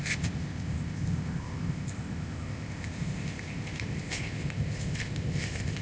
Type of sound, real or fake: fake